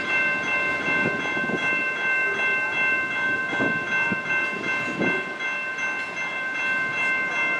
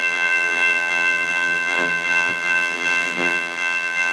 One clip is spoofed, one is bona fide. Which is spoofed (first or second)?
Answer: second